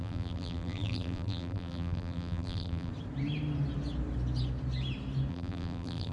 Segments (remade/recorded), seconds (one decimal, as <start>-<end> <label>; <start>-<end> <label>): 0.0-2.9 remade; 2.9-5.3 recorded; 5.3-6.1 remade